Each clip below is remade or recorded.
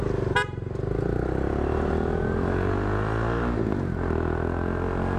recorded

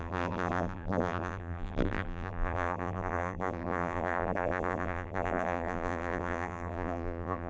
remade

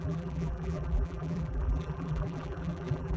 remade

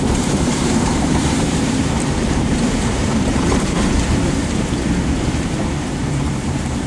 remade